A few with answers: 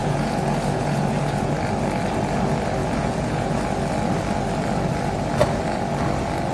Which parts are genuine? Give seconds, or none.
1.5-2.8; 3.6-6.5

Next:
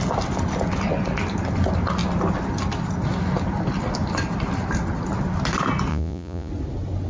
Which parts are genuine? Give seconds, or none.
0.0-5.9; 6.5-7.1

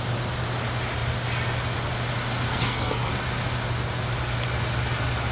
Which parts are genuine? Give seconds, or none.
0.0-2.5; 3.1-5.3

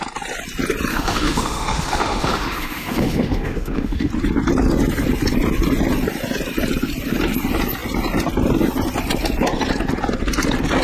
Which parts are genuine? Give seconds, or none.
0.0-0.9; 4.1-10.8